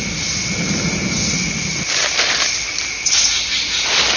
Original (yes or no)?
yes